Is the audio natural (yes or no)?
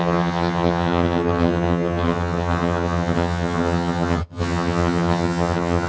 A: no